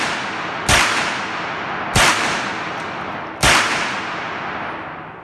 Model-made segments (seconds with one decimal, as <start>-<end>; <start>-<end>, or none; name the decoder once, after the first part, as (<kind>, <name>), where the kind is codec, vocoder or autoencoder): none